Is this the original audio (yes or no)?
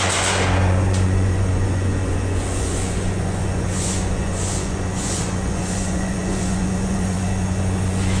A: no